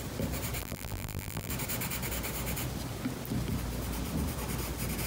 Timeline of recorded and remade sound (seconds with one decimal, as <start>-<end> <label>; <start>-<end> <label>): 0.0-0.6 recorded; 0.6-1.5 remade; 1.5-5.1 recorded